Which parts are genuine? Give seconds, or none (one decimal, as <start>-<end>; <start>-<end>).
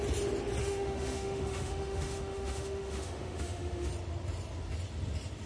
0.0-0.6; 3.9-5.5